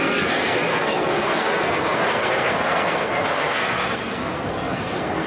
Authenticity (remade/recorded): remade